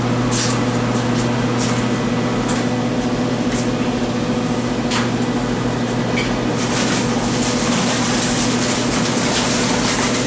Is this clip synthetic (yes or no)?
no